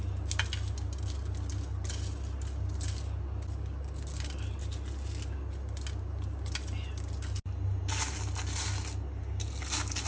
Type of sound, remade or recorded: recorded